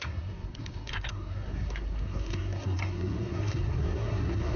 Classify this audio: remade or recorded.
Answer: remade